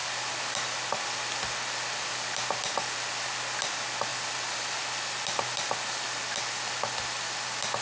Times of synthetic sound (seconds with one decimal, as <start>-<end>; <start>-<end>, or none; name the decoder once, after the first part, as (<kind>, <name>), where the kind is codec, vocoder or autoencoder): none